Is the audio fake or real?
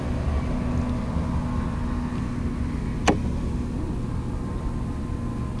real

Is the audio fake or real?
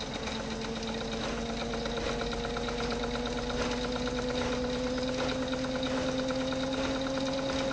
real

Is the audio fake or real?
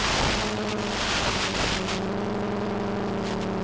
real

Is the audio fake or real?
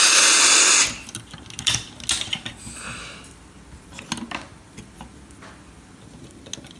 real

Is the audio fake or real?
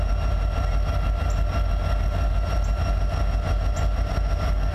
real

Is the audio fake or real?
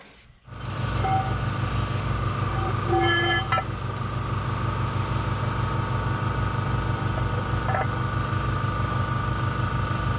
real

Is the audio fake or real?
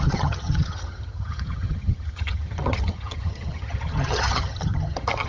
fake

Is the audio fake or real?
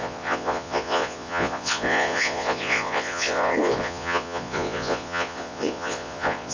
fake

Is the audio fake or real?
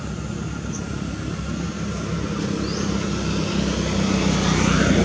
real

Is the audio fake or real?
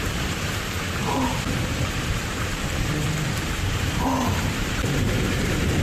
fake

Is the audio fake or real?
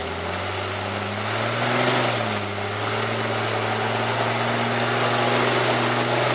real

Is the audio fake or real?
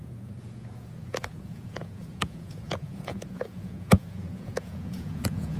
fake